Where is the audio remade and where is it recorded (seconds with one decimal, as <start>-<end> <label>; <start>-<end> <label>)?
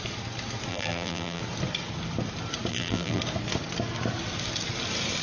0.0-0.7 recorded; 0.7-1.4 remade; 1.4-2.7 recorded; 2.7-3.2 remade; 3.2-5.2 recorded